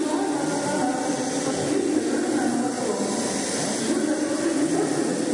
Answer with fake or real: real